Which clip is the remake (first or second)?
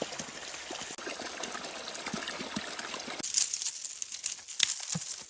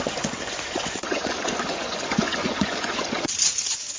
second